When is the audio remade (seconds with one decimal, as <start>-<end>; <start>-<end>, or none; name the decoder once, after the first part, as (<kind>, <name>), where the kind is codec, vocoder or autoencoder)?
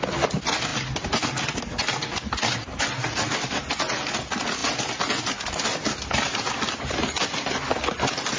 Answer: none